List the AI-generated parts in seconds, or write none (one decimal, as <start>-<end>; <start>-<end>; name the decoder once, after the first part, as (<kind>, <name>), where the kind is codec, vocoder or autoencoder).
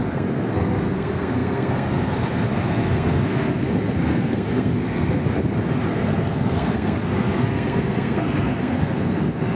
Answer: 0.0-5.2 (codec, SNAC); 5.9-9.6